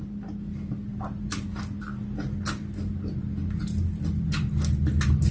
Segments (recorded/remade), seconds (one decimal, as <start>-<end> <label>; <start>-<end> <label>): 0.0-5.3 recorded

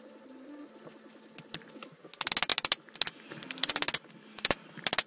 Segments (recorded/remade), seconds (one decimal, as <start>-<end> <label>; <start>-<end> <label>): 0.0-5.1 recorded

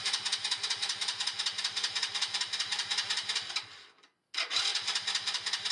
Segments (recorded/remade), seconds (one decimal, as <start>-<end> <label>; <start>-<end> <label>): 0.0-5.7 recorded

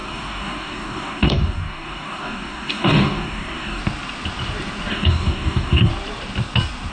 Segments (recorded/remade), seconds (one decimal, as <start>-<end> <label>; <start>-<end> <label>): 0.0-3.8 remade; 3.8-4.9 recorded; 4.9-5.9 remade; 5.9-6.9 recorded

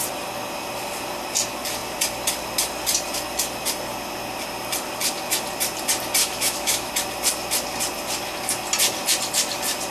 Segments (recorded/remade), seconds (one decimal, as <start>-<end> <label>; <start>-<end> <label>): 0.0-6.2 recorded; 6.2-6.9 remade; 6.9-9.9 recorded